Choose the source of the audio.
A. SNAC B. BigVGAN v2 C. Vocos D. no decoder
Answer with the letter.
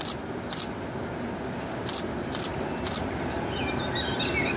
D